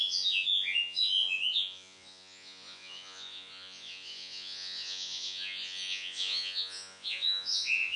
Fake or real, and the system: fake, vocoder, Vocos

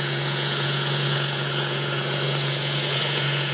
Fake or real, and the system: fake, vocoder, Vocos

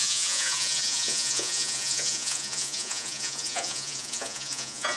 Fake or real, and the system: fake, vocoder, Vocos